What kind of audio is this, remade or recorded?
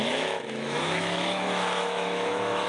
remade